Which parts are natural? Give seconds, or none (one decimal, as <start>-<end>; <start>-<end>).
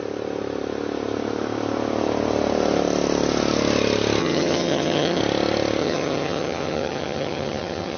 0.0-4.2; 5.2-5.8